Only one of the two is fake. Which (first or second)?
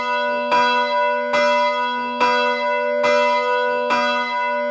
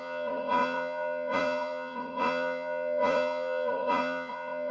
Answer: second